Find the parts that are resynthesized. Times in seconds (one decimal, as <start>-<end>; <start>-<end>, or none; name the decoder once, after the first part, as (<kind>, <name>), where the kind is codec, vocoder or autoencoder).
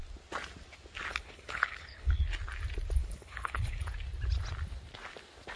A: 1.1-2.3 (codec, HILCodec); 3.0-3.8